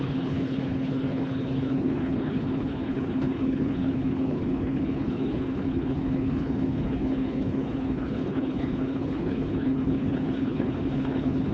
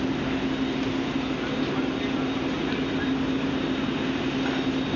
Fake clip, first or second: first